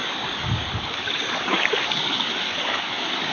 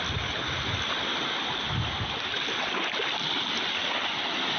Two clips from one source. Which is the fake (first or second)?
first